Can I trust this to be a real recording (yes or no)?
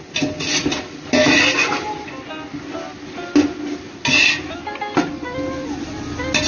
yes